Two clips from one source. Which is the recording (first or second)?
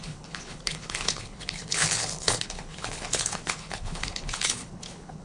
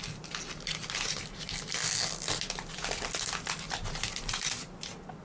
second